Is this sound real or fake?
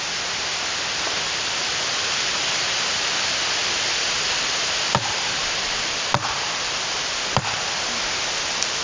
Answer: real